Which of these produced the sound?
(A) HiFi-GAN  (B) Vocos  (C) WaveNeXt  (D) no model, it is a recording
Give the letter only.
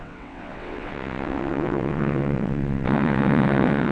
C